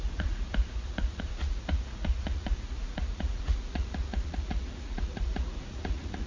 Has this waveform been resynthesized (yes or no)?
yes